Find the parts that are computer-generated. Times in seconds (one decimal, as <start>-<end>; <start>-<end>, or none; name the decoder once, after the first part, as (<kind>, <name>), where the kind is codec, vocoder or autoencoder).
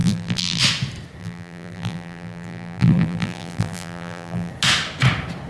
0.0-0.6 (vocoder, BigVGAN v2); 1.2-4.5